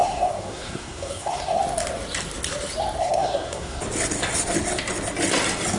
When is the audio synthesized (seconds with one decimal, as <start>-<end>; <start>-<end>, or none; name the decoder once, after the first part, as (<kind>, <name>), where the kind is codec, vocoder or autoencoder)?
0.0-1.6 (codec, SNAC); 3.0-3.8